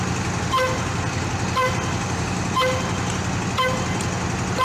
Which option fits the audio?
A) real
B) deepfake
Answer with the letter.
A